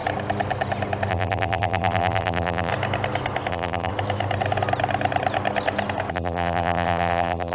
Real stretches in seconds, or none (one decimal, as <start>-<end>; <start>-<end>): 0.0-1.1; 2.7-3.5; 3.9-6.1